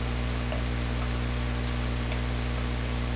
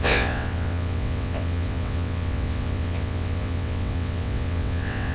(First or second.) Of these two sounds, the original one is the first